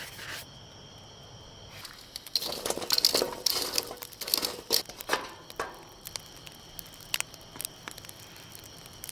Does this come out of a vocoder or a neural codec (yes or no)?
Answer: no